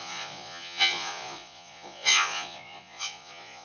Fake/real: fake